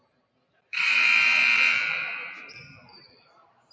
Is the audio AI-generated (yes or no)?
yes